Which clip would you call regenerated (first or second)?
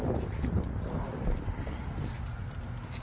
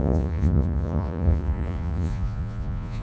second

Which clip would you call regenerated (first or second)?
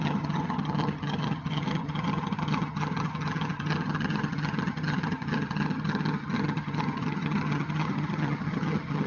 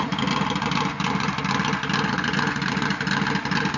first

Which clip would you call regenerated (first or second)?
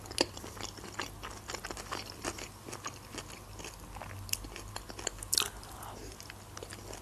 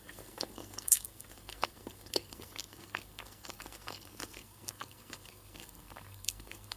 second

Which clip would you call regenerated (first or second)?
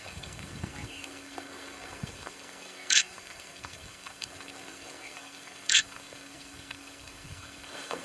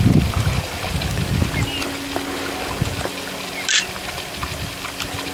first